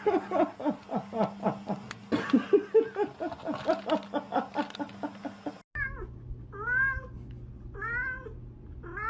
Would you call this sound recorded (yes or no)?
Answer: yes